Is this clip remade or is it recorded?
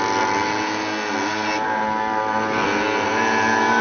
recorded